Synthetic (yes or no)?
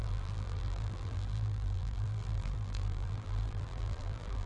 yes